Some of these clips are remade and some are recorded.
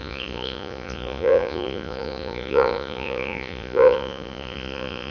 remade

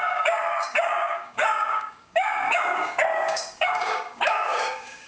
remade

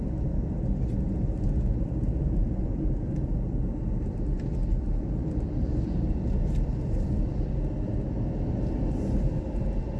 remade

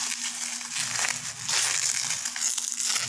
recorded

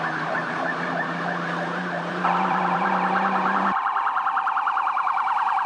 remade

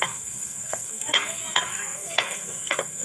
remade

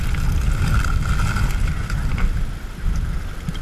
recorded